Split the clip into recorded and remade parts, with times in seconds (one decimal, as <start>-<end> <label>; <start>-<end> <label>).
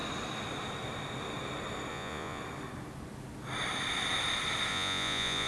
0.0-1.9 recorded; 1.9-2.4 remade; 2.4-4.7 recorded; 4.7-5.5 remade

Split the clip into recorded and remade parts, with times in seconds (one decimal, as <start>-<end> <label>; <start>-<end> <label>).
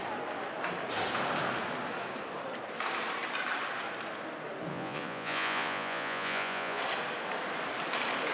0.0-4.7 recorded; 4.7-6.8 remade; 6.8-8.3 recorded